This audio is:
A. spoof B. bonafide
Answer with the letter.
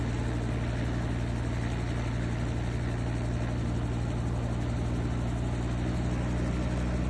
B